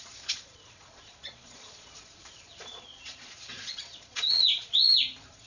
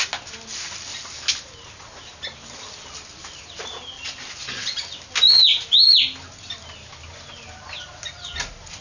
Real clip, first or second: second